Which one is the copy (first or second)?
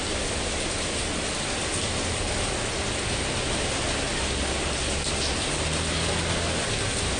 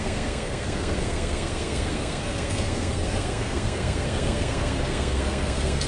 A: second